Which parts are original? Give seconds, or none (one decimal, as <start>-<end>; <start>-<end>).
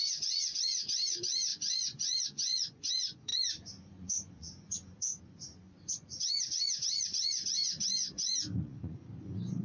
none